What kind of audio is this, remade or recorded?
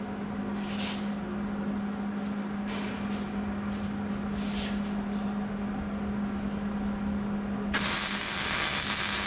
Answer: recorded